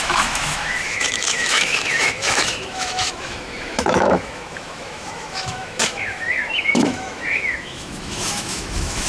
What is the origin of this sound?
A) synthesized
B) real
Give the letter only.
A